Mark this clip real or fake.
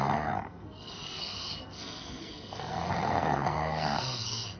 fake